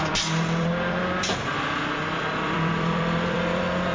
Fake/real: fake